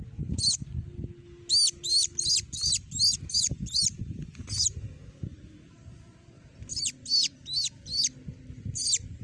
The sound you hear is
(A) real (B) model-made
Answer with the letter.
A